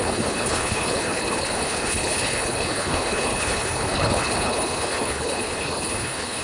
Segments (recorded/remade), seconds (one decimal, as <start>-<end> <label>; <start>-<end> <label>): 0.0-6.4 remade